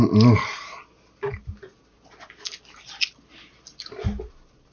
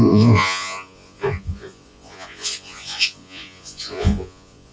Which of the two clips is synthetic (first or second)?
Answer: second